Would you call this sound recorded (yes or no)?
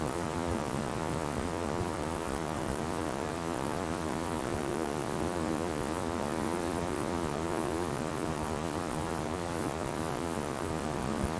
no